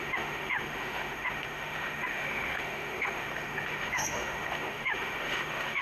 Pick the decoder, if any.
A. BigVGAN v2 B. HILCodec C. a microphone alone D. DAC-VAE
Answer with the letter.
D